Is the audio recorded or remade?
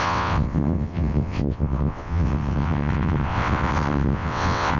remade